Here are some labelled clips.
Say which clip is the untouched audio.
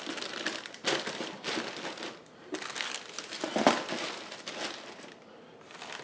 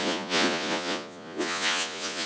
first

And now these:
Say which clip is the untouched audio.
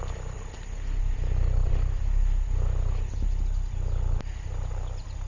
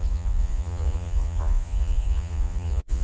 first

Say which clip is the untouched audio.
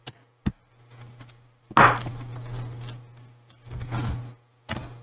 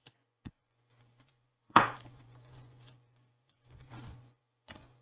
first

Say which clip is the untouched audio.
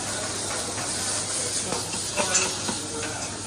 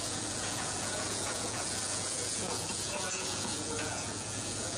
first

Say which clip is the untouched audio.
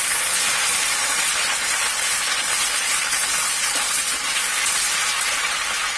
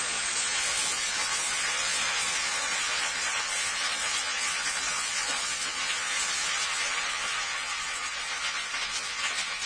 first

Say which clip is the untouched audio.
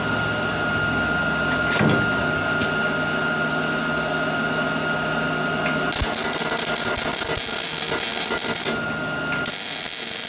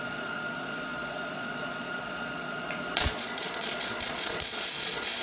first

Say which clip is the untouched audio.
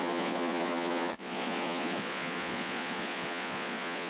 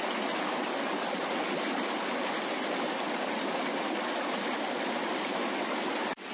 second